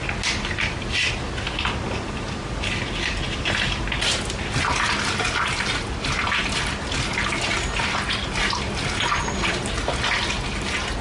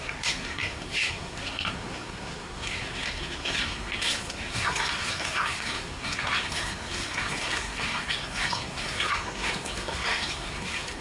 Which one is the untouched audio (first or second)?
first